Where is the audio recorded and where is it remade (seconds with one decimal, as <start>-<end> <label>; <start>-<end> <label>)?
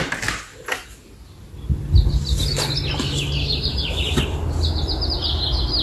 0.0-5.8 recorded